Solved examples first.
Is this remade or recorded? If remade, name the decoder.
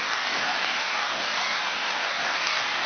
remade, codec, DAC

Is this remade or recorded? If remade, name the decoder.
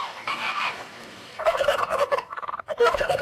remade, codec, DAC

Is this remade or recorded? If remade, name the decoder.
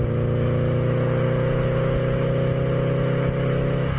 recorded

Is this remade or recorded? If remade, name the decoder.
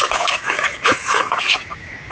remade, codec, DAC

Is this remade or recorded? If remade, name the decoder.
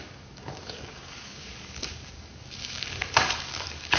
remade, codec, DAC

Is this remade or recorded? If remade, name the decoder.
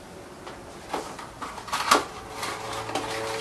recorded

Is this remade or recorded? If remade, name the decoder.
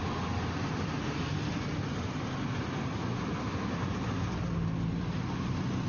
recorded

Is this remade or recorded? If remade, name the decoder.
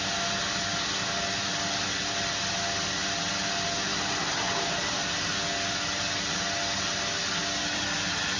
recorded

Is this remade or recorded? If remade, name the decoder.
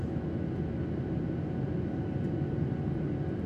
recorded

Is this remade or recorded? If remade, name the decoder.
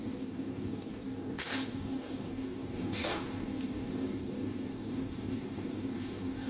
remade, codec, DAC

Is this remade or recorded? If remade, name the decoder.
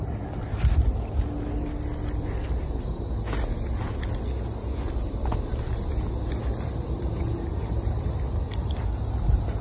recorded